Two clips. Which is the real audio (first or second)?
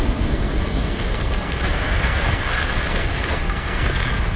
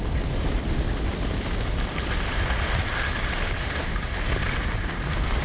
second